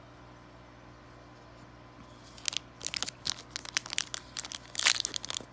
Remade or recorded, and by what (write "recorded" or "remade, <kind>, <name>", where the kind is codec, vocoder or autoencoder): recorded